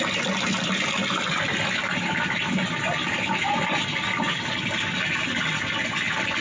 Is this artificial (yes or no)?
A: no